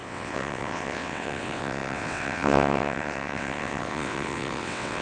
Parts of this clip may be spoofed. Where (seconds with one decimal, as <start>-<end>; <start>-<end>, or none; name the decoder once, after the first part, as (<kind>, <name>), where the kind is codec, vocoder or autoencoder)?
0.0-5.0 (vocoder, WaveNeXt)